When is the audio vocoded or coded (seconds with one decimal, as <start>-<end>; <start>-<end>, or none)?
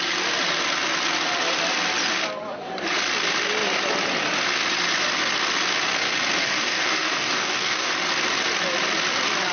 6.4-7.9